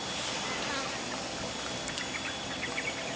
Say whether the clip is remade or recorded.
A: recorded